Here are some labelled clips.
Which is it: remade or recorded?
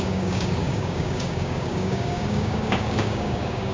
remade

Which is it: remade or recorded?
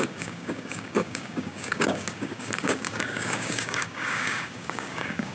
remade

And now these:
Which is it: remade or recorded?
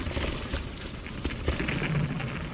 recorded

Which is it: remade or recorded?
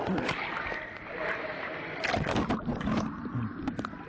recorded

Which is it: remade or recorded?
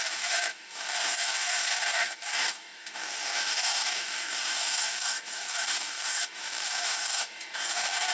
remade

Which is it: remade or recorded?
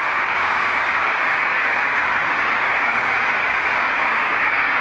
remade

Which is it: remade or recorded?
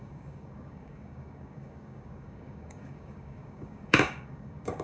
remade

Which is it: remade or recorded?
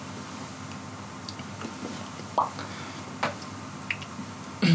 recorded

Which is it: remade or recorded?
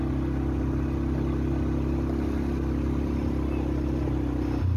recorded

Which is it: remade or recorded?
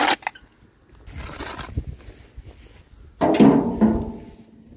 recorded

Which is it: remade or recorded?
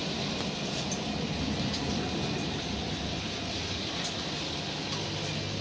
recorded